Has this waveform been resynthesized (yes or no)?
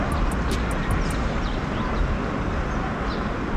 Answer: no